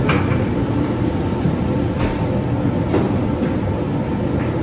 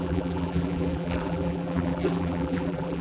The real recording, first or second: first